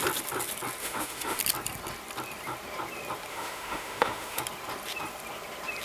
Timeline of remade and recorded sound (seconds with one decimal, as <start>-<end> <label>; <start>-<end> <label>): 0.0-0.8 recorded; 0.8-1.4 remade; 1.4-3.3 recorded; 3.3-4.4 remade; 4.4-5.8 recorded